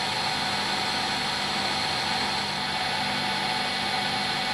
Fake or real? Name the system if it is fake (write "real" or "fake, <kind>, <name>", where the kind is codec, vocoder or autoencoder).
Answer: real